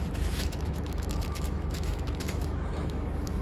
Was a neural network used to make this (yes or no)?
yes